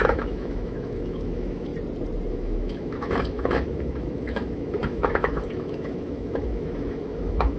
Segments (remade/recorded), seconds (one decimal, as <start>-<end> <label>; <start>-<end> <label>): 0.0-1.7 remade; 1.7-2.3 recorded; 2.3-7.6 remade